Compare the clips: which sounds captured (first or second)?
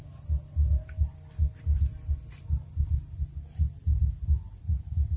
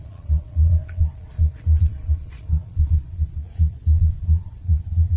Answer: first